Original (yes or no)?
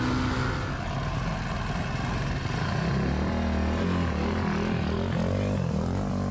yes